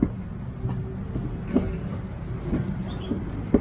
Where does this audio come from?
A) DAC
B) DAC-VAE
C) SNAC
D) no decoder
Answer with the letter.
D